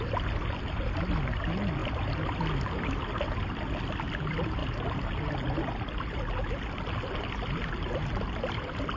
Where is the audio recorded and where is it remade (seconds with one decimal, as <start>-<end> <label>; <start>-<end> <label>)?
0.0-9.0 recorded